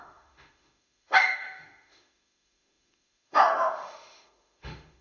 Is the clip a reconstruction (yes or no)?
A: yes